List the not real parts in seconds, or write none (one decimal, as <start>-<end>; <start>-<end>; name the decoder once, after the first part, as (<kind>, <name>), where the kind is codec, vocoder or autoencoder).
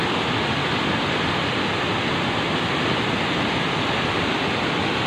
none